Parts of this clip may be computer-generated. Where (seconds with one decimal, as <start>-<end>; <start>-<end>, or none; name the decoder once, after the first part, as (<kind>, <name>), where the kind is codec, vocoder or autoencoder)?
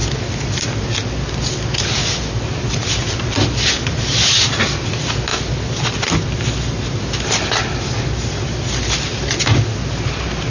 none